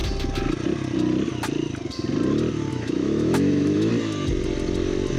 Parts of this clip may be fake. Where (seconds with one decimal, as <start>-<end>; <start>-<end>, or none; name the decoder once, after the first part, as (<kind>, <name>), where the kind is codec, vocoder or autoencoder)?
2.7-3.9 (autoencoder, DAC-VAE)